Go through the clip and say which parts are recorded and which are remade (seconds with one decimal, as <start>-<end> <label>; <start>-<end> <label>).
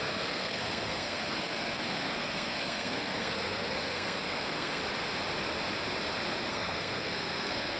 0.0-4.8 remade; 4.8-6.5 recorded; 6.5-7.8 remade